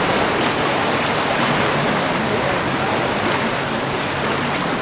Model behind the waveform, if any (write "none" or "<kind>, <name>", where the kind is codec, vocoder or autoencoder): none